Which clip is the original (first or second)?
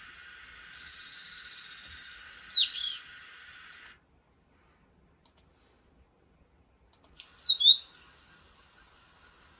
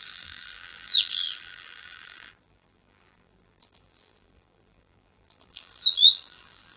first